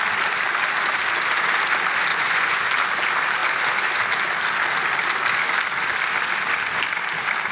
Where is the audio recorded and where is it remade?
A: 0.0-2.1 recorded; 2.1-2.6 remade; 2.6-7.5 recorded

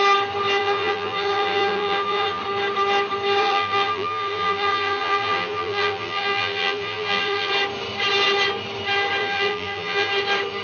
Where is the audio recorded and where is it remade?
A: 0.0-0.6 recorded; 0.6-2.4 remade; 2.4-3.4 recorded; 3.4-7.5 remade; 7.5-9.2 recorded; 9.2-10.1 remade; 10.1-10.6 recorded

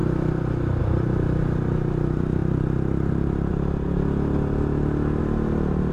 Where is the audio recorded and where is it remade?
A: 0.0-0.8 recorded; 0.8-3.5 remade; 3.5-5.2 recorded; 5.2-5.9 remade

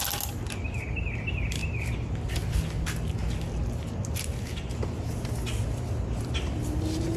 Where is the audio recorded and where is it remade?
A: 0.0-7.2 recorded

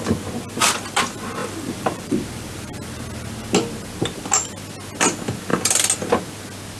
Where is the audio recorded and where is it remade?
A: 0.0-1.4 recorded; 1.4-3.0 remade; 3.0-6.8 recorded